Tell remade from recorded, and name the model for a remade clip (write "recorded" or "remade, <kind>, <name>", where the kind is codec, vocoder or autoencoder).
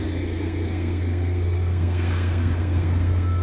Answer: remade, codec, SNAC